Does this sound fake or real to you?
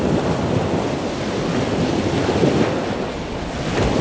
real